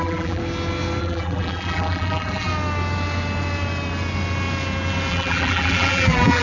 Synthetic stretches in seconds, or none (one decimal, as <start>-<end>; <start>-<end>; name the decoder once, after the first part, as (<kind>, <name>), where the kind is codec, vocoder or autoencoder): 0.0-0.4 (vocoder, BigVGAN v2); 1.0-2.5; 5.1-6.4